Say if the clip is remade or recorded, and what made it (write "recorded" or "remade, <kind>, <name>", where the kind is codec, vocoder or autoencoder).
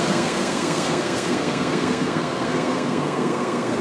remade, codec, SNAC